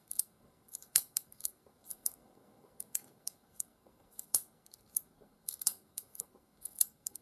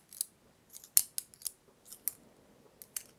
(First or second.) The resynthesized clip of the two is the first